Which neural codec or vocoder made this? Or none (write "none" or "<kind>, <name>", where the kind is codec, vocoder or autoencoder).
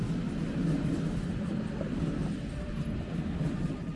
none